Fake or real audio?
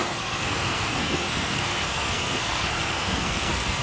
fake